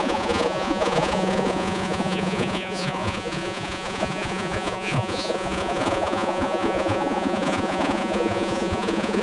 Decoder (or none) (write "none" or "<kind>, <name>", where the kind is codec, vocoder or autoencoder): vocoder, Vocos